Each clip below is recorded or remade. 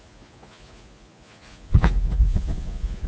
remade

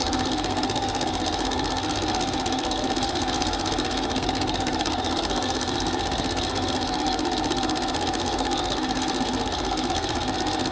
remade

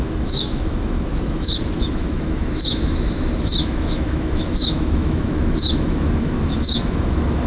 remade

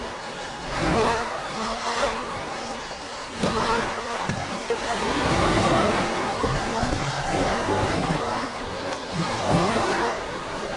remade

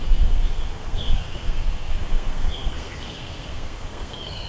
remade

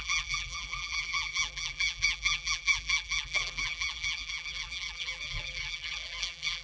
remade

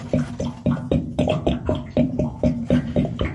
remade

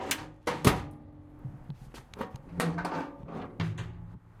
recorded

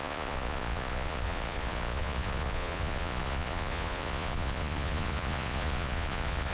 remade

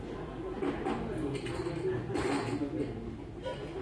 recorded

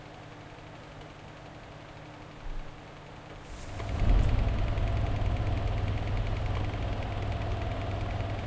recorded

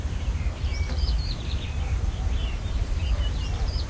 remade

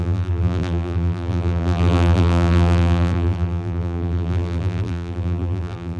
remade